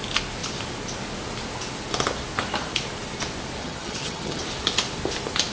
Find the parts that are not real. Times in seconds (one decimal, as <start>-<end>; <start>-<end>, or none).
3.6-4.4